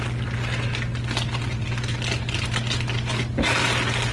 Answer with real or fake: real